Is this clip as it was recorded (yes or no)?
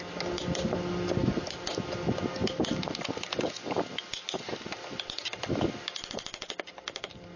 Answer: yes